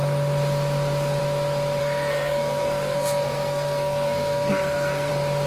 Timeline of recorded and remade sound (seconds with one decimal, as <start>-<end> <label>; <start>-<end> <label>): 0.0-1.8 recorded; 1.8-5.1 remade; 5.1-5.5 recorded